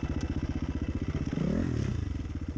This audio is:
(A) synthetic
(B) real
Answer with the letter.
B